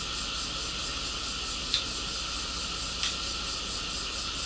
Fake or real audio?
real